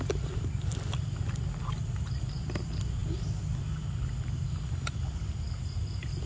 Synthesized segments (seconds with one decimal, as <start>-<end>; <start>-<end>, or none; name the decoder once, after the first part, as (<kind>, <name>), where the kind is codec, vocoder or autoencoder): none